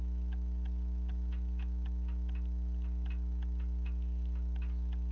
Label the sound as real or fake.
real